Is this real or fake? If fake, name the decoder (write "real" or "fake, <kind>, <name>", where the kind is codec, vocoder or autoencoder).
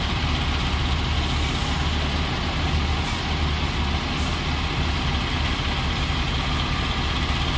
real